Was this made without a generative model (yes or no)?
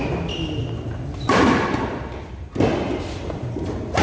yes